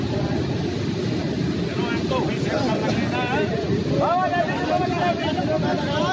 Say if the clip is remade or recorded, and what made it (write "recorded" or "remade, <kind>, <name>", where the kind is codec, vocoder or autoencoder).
recorded